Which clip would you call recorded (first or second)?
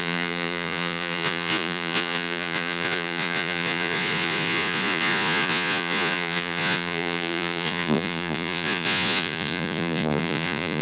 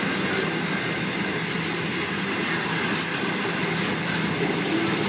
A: second